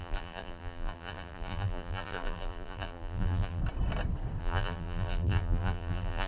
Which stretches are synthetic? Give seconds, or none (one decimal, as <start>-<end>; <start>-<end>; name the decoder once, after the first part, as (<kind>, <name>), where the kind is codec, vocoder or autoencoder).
0.0-3.6 (vocoder, BigVGAN v2); 4.4-6.3